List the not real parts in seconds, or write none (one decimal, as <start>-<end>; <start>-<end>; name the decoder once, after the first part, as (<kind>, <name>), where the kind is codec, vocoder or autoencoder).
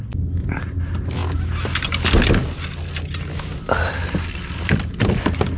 none